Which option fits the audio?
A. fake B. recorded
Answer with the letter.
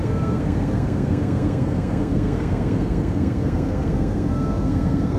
A